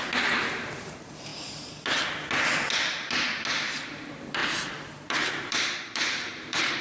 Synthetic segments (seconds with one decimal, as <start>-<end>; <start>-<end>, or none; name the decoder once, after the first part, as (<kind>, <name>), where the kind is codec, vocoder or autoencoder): 0.0-1.3 (vocoder, BigVGAN v2); 3.9-6.8